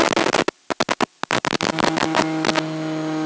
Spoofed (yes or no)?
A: no